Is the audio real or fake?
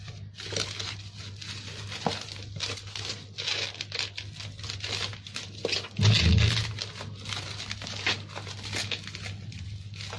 real